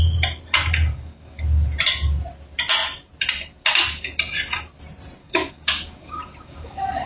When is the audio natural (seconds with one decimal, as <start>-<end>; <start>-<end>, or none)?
0.0-0.9; 1.4-5.2